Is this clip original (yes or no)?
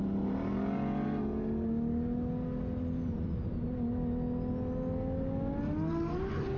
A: yes